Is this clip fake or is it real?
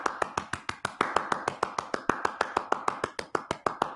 real